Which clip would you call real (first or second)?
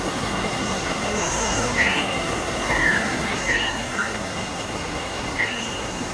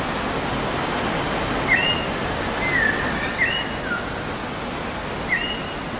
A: second